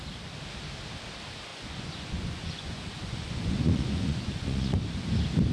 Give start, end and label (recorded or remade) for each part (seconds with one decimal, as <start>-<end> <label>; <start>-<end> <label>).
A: 0.0-1.5 recorded; 1.5-4.8 remade; 4.8-5.5 recorded